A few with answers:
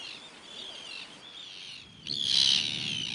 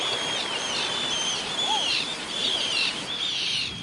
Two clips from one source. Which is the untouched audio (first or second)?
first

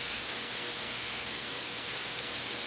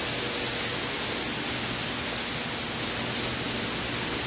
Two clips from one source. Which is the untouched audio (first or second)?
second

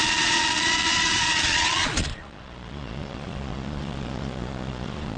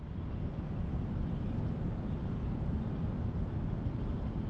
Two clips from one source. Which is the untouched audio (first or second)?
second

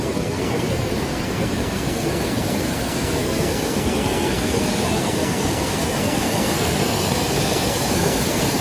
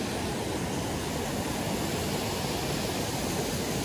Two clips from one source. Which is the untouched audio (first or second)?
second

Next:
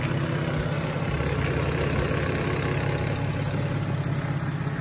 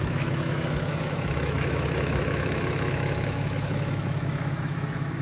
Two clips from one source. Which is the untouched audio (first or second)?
first